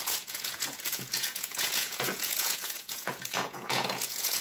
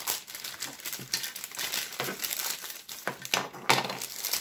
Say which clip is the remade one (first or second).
first